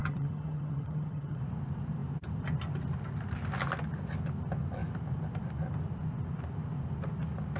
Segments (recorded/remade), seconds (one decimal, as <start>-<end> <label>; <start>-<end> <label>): 0.0-1.4 remade; 1.4-7.6 recorded